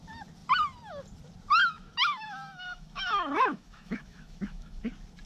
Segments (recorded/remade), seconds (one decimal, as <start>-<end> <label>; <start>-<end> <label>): 0.0-1.6 recorded; 1.6-4.8 remade; 4.8-5.3 recorded